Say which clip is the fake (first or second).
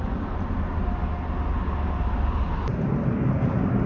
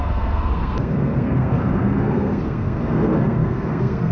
second